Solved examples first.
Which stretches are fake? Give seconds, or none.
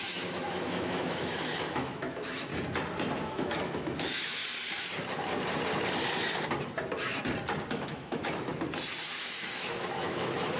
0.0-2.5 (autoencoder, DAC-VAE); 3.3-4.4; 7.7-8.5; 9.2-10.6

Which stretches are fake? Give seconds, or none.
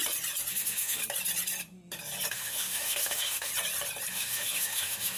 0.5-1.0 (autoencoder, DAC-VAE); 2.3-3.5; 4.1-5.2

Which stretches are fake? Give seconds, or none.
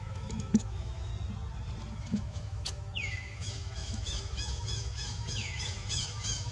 0.0-1.1 (autoencoder, DAC-VAE); 1.9-6.5